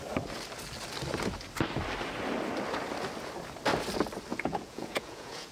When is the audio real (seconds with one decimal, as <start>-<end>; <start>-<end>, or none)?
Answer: 0.0-4.3